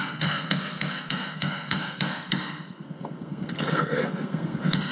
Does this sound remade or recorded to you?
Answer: remade